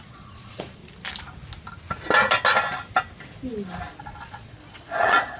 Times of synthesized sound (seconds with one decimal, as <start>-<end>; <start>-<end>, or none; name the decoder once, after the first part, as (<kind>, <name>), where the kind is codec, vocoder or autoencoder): 0.0-0.8 (vocoder, Vocos); 4.0-5.4